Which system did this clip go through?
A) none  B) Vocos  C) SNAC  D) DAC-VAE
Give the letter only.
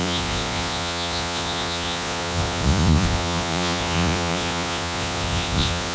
B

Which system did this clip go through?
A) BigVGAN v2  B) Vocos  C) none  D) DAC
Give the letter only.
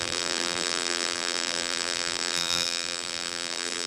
A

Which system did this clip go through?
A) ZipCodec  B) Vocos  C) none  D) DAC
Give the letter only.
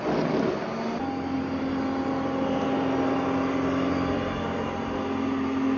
C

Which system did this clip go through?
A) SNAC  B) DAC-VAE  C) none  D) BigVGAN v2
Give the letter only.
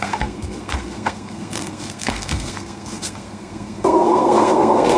A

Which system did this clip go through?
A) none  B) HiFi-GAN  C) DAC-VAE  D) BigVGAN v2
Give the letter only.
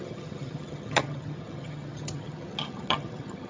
B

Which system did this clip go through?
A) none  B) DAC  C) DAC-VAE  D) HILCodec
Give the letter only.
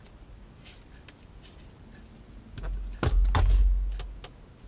A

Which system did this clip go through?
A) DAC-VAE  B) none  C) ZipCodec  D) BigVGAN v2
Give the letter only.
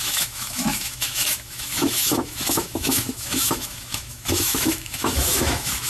A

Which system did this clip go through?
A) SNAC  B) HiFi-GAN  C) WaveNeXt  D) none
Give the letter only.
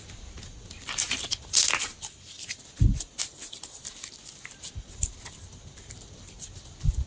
D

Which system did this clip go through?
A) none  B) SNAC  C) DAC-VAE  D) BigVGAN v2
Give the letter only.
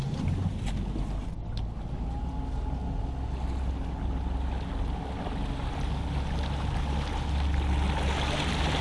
A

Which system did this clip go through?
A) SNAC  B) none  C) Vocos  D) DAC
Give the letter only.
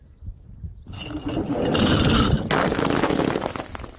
B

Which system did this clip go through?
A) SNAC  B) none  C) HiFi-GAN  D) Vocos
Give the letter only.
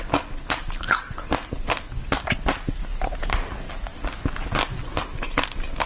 B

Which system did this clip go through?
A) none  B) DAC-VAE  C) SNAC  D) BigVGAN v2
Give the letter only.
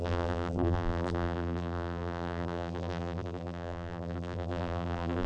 D